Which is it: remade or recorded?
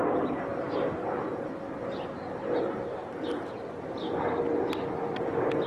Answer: recorded